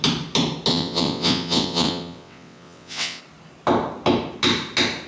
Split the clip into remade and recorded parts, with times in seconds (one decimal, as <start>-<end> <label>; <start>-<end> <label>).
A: 0.0-0.7 recorded; 0.7-3.2 remade; 3.2-5.1 recorded